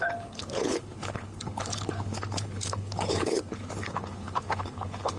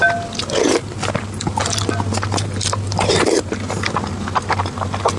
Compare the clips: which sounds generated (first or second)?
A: first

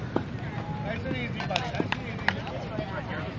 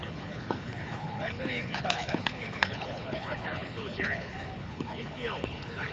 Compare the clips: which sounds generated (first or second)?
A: second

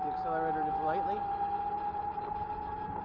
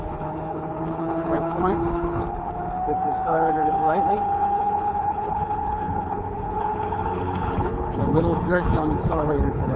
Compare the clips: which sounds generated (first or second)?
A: second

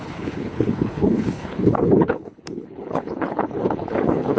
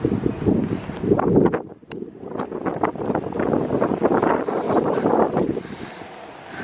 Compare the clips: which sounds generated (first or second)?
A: first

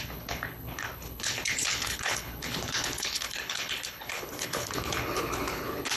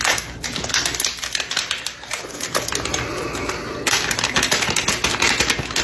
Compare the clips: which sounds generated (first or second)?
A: first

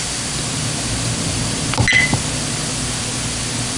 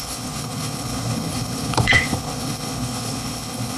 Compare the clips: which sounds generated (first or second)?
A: second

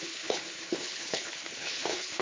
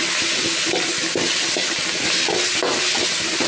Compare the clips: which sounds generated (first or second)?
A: first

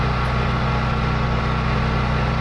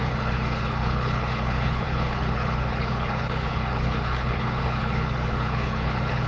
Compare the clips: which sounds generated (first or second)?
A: second